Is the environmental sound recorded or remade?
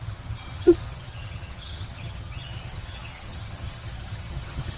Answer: remade